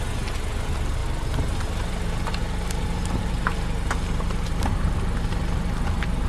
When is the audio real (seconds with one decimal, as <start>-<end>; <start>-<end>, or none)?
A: 0.0-6.3